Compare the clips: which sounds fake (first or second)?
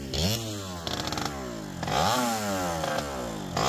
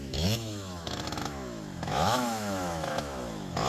second